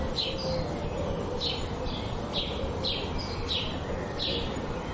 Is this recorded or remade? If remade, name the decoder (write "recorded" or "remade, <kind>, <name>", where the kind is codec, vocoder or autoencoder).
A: recorded